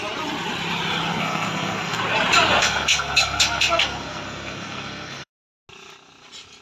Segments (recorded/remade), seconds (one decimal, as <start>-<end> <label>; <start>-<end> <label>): 0.0-1.1 recorded; 1.1-2.0 remade; 2.0-2.6 recorded; 2.6-5.3 remade; 5.3-6.6 recorded